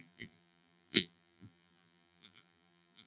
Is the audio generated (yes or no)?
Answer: yes